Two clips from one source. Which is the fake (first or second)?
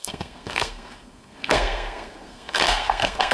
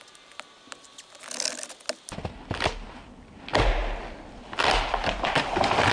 first